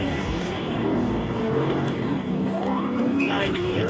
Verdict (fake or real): fake